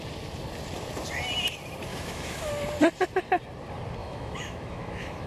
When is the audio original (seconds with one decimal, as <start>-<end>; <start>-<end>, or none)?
0.0-1.9; 2.5-4.0